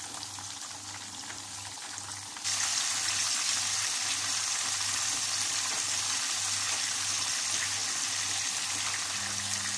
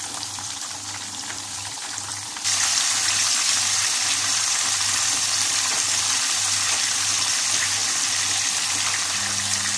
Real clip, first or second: first